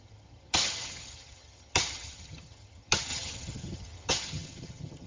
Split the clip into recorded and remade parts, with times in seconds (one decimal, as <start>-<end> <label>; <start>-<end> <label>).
0.0-5.1 remade

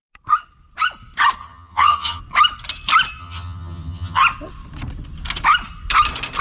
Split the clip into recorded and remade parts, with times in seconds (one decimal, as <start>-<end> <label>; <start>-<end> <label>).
0.0-1.4 recorded; 1.4-2.2 remade; 2.2-3.2 recorded; 3.2-4.2 remade; 4.2-6.4 recorded

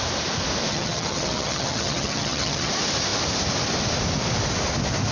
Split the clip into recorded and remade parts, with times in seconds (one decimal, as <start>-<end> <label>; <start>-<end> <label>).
0.0-0.7 recorded; 0.7-2.7 remade; 2.7-5.1 recorded

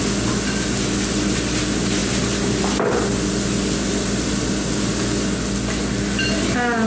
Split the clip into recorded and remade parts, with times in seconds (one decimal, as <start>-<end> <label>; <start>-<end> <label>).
0.0-6.9 recorded

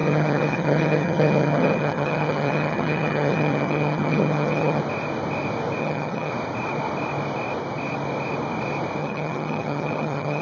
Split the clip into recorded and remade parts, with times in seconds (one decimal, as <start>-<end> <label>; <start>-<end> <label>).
0.0-4.8 remade; 4.8-5.8 recorded; 5.8-6.3 remade; 6.3-9.0 recorded; 9.0-10.4 remade